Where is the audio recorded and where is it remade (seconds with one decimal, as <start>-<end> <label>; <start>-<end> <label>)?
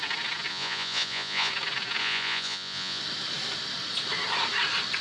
0.0-0.5 recorded; 0.5-1.5 remade; 1.5-2.0 recorded; 2.0-3.0 remade; 3.0-5.0 recorded